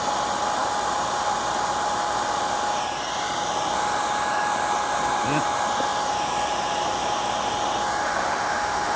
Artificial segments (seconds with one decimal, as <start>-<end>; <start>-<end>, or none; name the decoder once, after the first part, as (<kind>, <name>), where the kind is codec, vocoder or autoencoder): 8.0-9.0 (autoencoder, DAC-VAE)